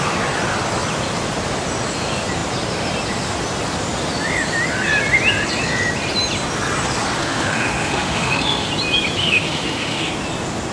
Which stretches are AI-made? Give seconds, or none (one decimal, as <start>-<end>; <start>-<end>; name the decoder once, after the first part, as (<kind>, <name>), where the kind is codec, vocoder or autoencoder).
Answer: 7.2-8.7 (autoencoder, DAC-VAE); 9.2-10.1